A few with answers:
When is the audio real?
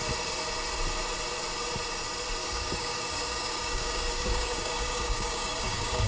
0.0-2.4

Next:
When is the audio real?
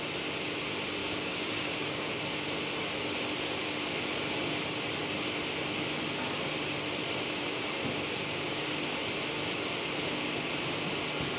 0.0-1.0; 2.1-11.4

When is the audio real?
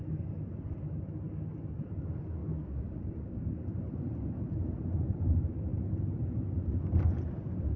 0.0-2.4; 3.8-7.8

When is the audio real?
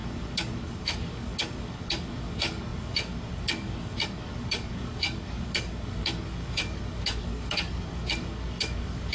none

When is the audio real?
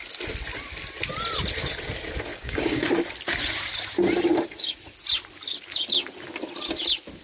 0.0-2.3; 2.9-7.2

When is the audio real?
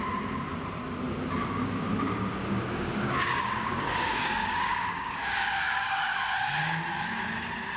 0.0-1.4; 6.1-7.8